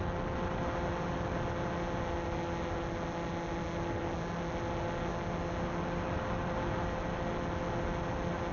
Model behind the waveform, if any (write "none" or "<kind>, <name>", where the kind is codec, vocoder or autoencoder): none